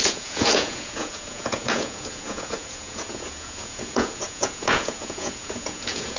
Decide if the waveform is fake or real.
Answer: fake